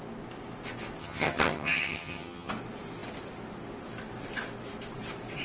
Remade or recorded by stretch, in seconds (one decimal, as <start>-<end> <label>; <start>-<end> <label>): 0.0-1.0 recorded; 1.0-2.5 remade; 2.5-5.4 recorded